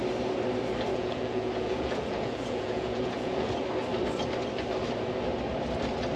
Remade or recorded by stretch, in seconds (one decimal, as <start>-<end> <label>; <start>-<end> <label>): 0.0-0.9 recorded; 0.9-3.5 remade; 3.5-6.2 recorded